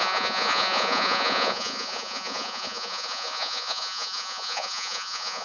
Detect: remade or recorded remade